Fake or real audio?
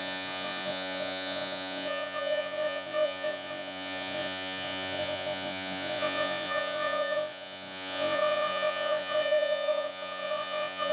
fake